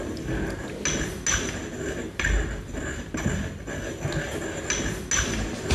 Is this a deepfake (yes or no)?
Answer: no